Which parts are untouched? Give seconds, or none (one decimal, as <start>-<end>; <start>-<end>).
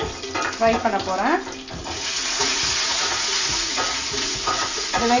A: 0.0-1.8